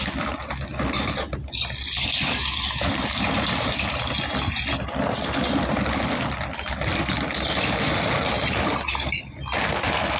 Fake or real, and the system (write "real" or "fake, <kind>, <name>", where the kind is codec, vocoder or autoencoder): real